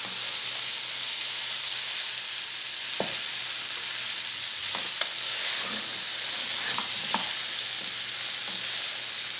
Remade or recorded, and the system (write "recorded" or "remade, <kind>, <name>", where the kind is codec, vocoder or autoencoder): recorded